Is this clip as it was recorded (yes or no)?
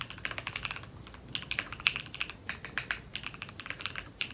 yes